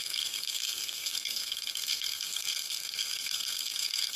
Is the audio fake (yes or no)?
yes